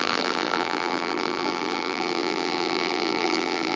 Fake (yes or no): yes